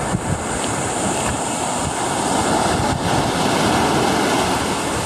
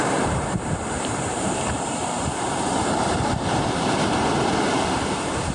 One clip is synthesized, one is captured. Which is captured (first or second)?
first